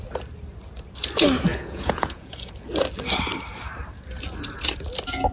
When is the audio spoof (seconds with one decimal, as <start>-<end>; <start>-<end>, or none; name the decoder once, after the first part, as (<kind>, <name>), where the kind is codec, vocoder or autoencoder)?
1.5-2.5 (vocoder, Vocos)